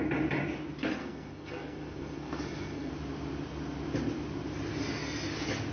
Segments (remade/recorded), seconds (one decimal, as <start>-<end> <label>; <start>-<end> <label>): 0.0-1.0 recorded; 1.0-2.9 remade; 2.9-5.7 recorded